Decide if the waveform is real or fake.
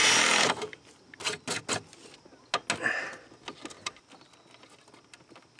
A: real